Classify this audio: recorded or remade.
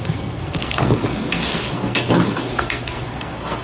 remade